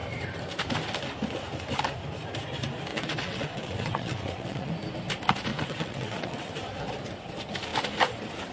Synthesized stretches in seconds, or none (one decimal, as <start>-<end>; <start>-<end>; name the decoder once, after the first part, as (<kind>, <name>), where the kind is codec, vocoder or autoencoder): 2.9-4.7 (vocoder, WaveNeXt); 5.5-6.5